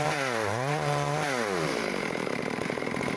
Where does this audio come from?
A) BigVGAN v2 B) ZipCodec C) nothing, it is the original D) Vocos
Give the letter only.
A